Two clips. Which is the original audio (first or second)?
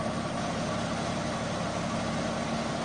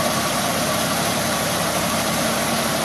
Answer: first